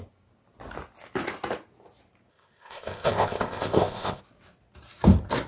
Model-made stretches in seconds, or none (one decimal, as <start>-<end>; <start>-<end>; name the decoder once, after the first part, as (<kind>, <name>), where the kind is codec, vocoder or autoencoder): 2.3-4.2 (codec, ZipCodec)